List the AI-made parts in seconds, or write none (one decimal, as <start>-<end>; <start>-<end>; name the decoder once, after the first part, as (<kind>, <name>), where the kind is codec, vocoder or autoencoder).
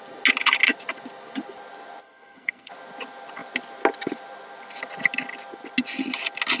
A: 2.0-2.7 (codec, SNAC)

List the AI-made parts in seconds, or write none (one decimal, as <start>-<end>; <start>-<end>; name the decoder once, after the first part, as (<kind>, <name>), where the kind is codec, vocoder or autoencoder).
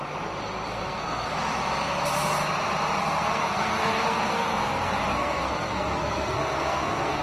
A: 0.7-1.3 (codec, SNAC); 3.0-7.2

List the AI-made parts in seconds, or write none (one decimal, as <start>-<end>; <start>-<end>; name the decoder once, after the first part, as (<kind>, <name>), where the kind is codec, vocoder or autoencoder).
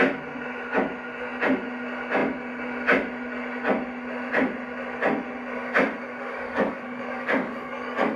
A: 6.0-8.2 (codec, DAC)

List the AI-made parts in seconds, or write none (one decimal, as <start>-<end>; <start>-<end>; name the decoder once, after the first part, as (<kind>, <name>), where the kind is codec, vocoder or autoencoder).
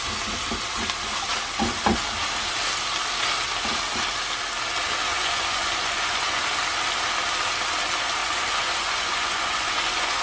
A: 5.1-6.4 (vocoder, Vocos); 8.2-10.2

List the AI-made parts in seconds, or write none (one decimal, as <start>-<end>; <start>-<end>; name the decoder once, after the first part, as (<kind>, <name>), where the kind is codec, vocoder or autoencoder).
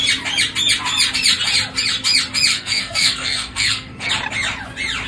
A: 2.5-4.1 (codec, SNAC)